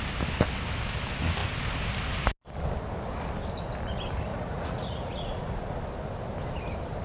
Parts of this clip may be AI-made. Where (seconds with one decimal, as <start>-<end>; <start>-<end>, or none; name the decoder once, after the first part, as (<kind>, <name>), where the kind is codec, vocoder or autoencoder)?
4.3-5.8 (vocoder, Vocos)